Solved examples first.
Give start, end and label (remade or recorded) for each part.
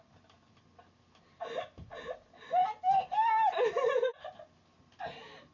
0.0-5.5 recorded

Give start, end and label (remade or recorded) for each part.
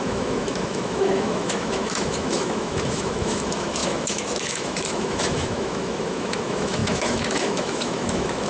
0.0-8.5 remade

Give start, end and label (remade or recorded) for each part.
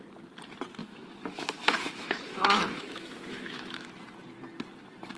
0.0-0.8 recorded; 0.8-3.9 remade; 3.9-5.2 recorded